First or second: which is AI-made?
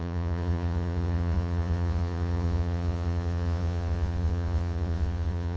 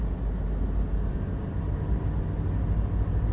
first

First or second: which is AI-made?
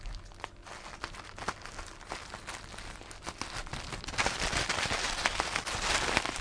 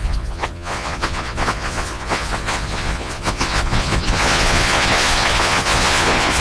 second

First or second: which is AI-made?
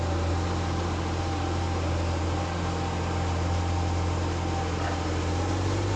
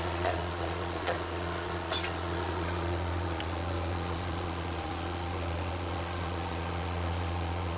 second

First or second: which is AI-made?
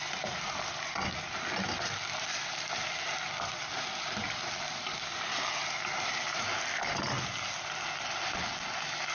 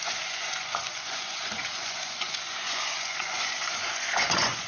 second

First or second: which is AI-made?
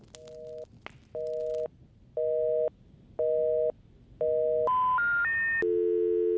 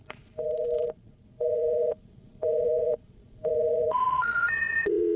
second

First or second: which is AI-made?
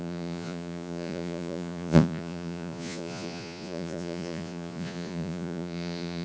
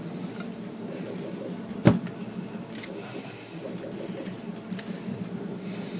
first